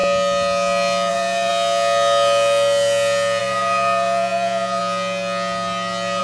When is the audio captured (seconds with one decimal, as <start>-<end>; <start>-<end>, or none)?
0.0-1.1; 1.5-3.4; 4.8-6.2